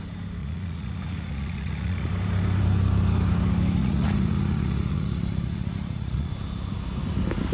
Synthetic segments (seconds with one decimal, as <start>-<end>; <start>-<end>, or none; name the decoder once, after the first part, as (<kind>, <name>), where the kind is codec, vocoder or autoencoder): 0.4-2.1 (vocoder, Vocos); 3.8-6.3